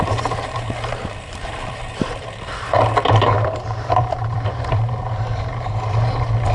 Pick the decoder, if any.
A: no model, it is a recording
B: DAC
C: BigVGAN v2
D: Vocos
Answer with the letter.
C